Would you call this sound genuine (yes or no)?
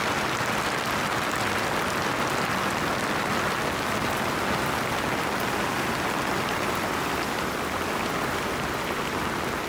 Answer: yes